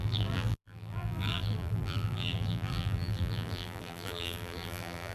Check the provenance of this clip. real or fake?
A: fake